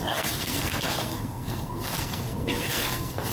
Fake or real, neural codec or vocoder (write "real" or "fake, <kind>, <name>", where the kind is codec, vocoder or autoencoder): fake, codec, SNAC